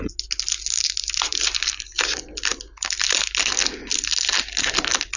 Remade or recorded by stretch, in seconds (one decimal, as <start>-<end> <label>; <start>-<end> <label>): 0.0-1.3 recorded; 1.3-2.0 remade; 2.0-5.2 recorded

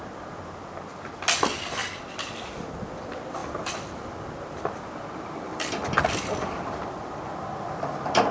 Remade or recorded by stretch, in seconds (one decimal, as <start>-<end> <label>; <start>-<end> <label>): 0.0-1.8 recorded; 1.8-2.8 remade; 2.8-3.4 recorded; 3.4-8.3 remade

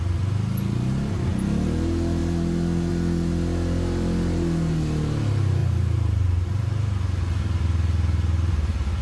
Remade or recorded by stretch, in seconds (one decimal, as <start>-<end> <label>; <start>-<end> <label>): 0.0-5.6 recorded; 5.6-6.7 remade; 6.7-9.0 recorded

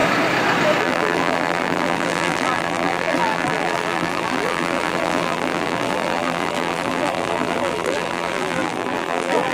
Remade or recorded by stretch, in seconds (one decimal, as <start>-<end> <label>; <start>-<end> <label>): 0.0-0.8 recorded; 0.8-9.5 remade

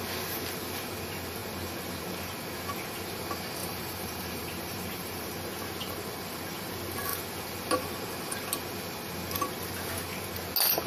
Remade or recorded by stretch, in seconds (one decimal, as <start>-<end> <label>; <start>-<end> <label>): 0.0-3.6 recorded; 3.6-5.3 remade; 5.3-10.9 recorded

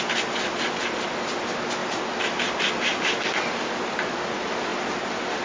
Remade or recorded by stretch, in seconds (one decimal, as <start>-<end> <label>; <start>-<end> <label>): 0.0-1.8 recorded; 1.8-3.2 remade; 3.2-5.4 recorded

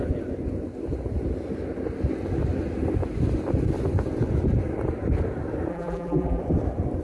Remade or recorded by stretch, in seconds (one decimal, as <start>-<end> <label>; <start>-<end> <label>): 0.0-5.7 recorded; 5.7-6.4 remade; 6.4-7.0 recorded

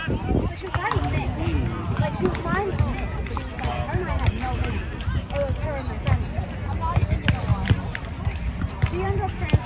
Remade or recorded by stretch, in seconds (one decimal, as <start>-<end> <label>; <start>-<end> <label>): 0.0-7.5 recorded; 7.5-8.7 remade; 8.7-9.7 recorded